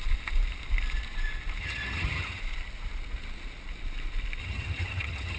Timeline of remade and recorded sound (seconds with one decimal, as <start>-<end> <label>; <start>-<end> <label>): 0.0-1.6 recorded; 1.6-2.4 remade; 2.4-4.4 recorded; 4.4-5.4 remade